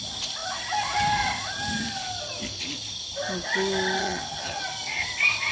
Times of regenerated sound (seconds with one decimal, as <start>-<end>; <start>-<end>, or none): 4.0-4.6